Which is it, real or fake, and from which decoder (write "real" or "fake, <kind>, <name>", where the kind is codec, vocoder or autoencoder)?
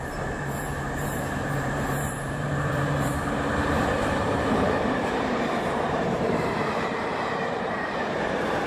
fake, vocoder, BigVGAN v2